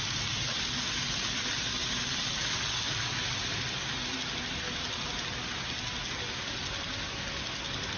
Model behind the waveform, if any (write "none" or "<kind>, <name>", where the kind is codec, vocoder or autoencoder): none